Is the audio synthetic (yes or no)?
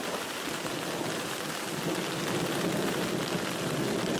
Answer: no